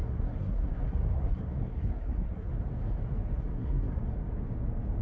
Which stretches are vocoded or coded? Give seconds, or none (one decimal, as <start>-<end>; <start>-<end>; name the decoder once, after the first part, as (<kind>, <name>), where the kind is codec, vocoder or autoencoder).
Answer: 0.0-2.5 (codec, SNAC); 3.4-4.0